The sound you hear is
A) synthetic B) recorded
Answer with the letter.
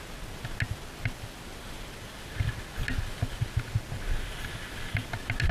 B